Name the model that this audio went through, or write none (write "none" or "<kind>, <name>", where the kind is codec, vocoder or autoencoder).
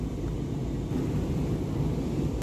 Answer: none